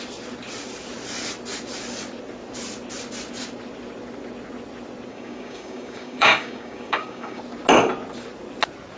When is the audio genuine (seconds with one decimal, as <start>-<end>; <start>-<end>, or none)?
0.0-5.1; 7.4-9.0